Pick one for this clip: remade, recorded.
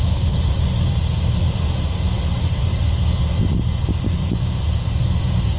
remade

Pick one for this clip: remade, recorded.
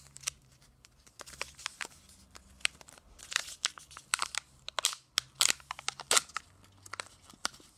recorded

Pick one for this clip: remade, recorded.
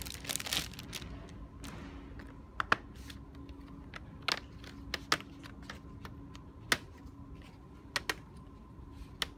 recorded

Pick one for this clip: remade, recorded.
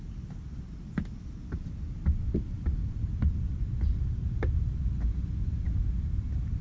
recorded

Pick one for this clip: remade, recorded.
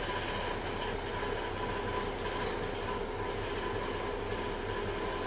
recorded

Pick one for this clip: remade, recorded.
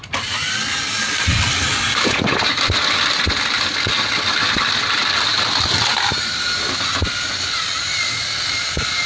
remade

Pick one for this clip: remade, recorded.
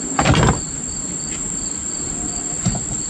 remade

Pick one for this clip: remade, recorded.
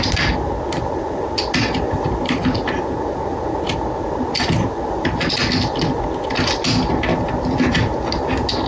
recorded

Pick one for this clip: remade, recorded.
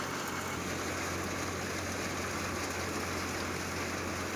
recorded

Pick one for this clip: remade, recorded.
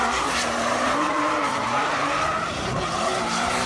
remade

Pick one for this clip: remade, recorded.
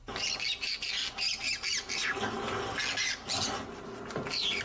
recorded